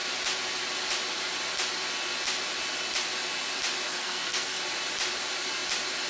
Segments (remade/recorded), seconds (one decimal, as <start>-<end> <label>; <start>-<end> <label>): 0.0-3.9 recorded; 3.9-4.6 remade; 4.6-6.1 recorded